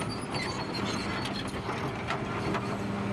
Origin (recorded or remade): recorded